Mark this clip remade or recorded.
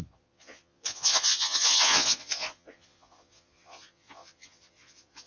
remade